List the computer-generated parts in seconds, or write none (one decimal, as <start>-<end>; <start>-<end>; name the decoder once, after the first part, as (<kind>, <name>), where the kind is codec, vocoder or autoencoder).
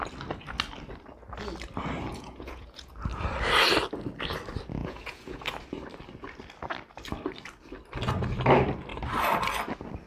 2.1-2.9 (vocoder, Vocos); 4.8-5.4